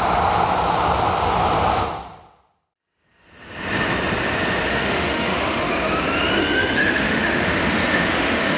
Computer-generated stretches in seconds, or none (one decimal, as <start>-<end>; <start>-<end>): 4.7-5.7; 6.4-8.6

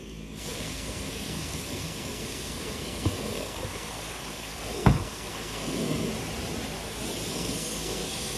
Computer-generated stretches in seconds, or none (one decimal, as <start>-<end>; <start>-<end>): 0.0-6.1; 7.3-8.4

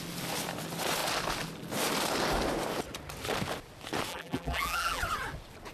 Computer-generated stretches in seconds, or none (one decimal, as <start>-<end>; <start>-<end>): 4.1-5.0

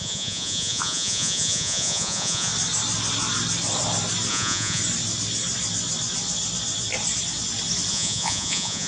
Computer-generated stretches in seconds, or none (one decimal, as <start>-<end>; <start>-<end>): 0.0-2.5; 4.3-4.8; 7.9-8.9

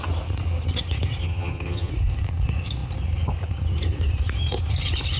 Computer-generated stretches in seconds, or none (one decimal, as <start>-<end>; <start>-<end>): 1.2-1.9

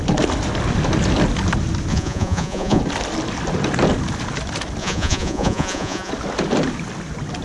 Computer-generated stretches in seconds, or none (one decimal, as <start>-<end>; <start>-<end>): 1.9-2.8; 4.8-6.1

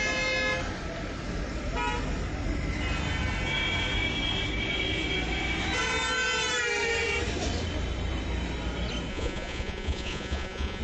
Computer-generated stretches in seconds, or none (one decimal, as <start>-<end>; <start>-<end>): 9.1-10.8